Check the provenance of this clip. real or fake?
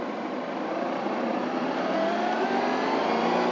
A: real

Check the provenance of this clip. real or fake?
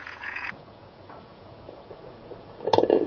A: fake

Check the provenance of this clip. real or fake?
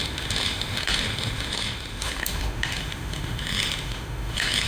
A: fake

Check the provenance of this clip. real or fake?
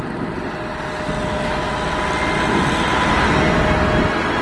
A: real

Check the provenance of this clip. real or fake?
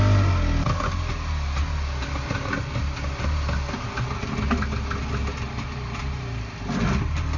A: real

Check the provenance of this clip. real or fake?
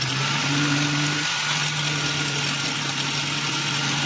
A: real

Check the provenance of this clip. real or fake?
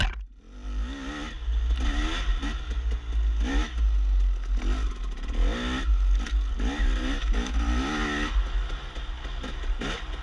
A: real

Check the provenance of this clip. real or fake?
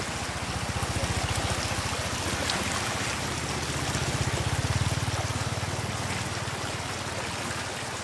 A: real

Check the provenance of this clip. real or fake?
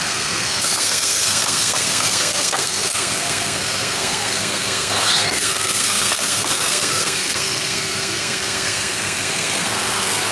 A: fake